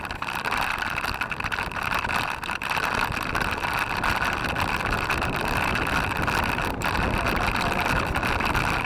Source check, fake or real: real